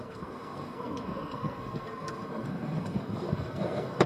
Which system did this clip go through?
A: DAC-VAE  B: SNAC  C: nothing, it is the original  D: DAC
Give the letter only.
B